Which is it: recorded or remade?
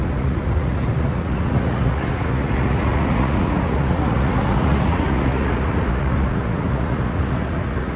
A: remade